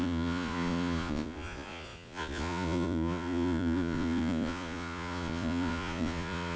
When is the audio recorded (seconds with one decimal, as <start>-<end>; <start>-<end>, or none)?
none